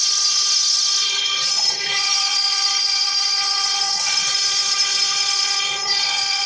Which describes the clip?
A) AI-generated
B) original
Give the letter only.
A